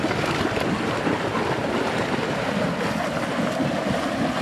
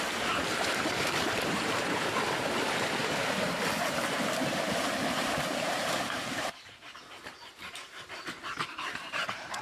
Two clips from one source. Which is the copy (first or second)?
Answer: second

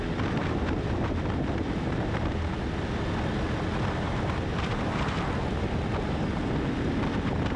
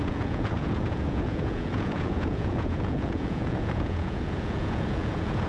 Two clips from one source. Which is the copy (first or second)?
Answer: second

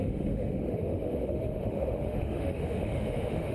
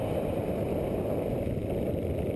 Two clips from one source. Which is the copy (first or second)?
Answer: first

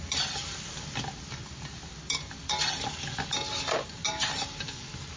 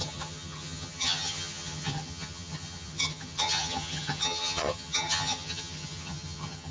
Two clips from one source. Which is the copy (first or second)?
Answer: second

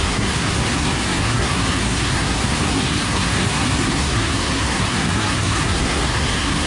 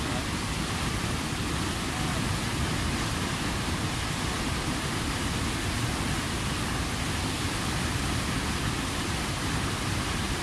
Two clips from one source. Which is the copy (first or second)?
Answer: first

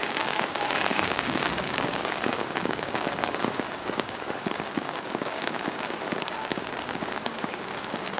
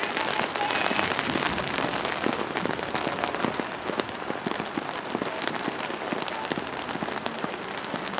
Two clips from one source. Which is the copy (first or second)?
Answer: first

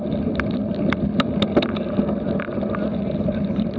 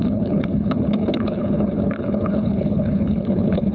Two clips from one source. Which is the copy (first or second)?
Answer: second